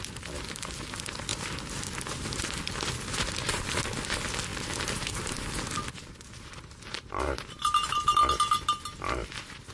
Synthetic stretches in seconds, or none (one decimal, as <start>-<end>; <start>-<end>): none